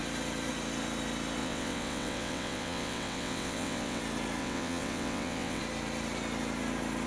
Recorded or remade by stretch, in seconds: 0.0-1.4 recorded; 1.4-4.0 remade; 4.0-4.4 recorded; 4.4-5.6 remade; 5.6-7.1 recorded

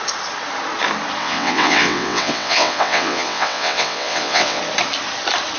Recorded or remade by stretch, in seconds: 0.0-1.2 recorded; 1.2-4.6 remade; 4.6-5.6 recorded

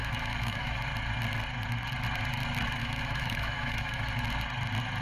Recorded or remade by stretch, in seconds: 0.0-0.8 remade; 0.8-2.8 recorded; 2.8-4.1 remade; 4.1-5.0 recorded

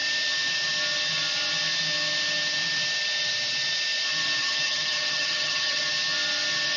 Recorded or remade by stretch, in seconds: 0.0-4.4 recorded; 4.4-5.8 remade; 5.8-6.8 recorded

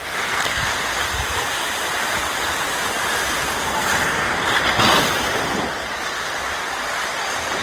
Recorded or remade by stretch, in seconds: 0.0-0.7 remade; 0.7-3.7 recorded; 3.7-4.3 remade; 4.3-7.6 recorded